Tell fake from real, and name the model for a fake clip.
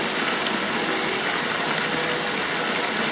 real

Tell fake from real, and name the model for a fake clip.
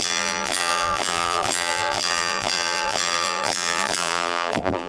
fake, vocoder, BigVGAN v2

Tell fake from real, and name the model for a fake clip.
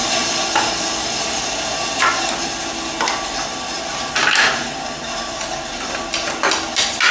real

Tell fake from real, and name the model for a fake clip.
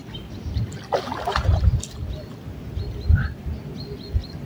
real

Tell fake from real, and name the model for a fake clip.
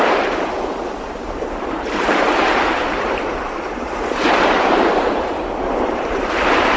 fake, vocoder, BigVGAN v2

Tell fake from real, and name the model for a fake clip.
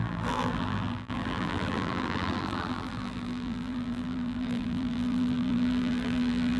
fake, vocoder, BigVGAN v2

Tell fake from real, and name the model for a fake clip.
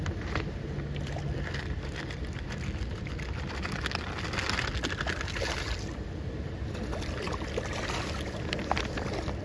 real